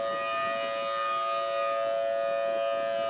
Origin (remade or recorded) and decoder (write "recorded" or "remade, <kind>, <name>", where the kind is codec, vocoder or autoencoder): recorded